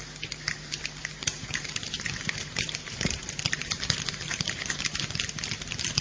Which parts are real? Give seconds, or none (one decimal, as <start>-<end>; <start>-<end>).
0.0-1.2; 4.8-6.0

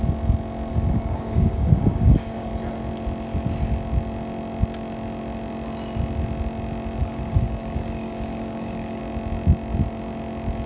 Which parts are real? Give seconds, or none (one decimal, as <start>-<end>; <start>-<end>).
0.0-0.7; 2.5-7.0; 9.0-10.7

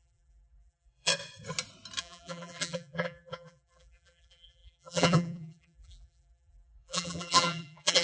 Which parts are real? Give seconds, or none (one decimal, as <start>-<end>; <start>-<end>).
1.1-2.0